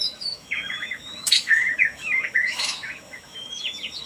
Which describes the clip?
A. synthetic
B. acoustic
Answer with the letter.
A